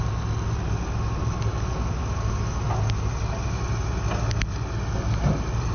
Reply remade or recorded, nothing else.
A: recorded